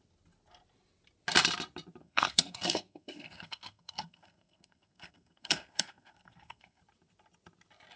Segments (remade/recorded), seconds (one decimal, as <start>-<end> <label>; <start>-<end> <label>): 0.0-2.0 recorded; 2.0-6.8 remade; 6.8-8.0 recorded

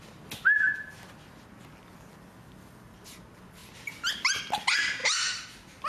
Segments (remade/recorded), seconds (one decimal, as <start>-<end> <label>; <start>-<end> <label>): 0.0-5.9 recorded

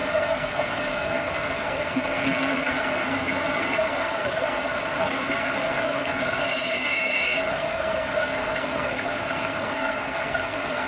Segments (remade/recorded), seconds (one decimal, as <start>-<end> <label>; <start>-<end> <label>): 0.0-10.9 remade

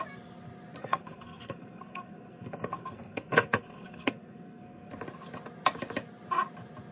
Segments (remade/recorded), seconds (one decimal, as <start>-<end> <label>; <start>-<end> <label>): 0.0-0.8 recorded; 0.8-4.9 remade; 4.9-6.9 recorded

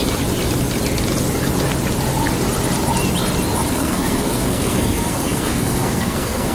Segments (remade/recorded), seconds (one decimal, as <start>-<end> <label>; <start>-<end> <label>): 0.0-3.7 recorded; 3.7-6.5 remade

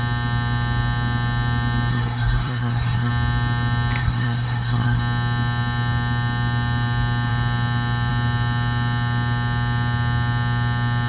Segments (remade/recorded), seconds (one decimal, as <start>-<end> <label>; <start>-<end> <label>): 0.0-1.9 recorded; 1.9-3.1 remade; 3.1-4.0 recorded; 4.0-5.0 remade; 5.0-11.1 recorded